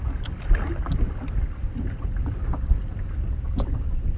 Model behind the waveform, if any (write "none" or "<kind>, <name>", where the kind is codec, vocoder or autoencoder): none